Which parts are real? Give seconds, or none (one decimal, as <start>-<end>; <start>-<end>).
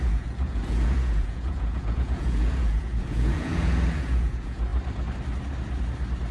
4.7-6.3